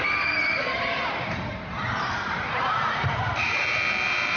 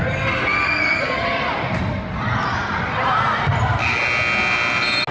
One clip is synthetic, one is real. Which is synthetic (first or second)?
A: first